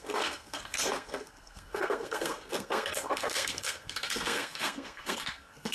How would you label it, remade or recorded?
remade